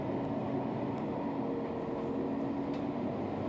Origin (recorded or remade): recorded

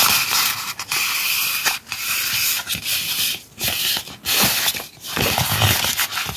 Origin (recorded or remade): recorded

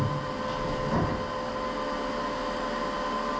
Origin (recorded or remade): recorded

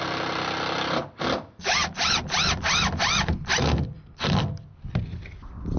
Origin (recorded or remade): recorded